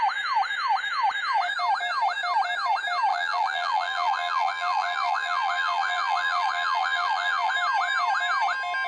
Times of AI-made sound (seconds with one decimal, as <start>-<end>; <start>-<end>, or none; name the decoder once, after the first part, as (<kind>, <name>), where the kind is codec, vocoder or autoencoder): 3.1-7.5 (vocoder, BigVGAN v2)

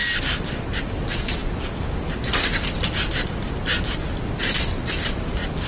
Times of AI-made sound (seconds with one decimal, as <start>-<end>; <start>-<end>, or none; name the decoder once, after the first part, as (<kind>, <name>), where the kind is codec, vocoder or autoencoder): none

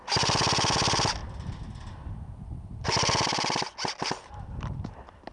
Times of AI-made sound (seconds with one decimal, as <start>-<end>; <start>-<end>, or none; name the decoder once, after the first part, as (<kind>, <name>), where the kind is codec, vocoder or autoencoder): none

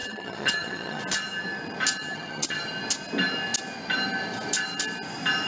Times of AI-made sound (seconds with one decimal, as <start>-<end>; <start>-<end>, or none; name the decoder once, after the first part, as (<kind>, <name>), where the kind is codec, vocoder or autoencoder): 0.0-1.0 (vocoder, HiFi-GAN); 2.0-2.6

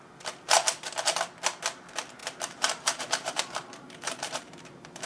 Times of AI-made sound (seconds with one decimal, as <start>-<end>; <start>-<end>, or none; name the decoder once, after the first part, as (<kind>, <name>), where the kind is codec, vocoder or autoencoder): 2.2-4.6 (vocoder, BigVGAN v2)

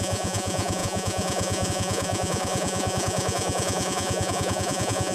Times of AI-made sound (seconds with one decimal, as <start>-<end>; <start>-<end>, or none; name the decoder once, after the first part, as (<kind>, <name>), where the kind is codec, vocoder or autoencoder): 0.0-5.1 (vocoder, Vocos)